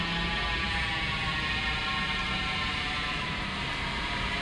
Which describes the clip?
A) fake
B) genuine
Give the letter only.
B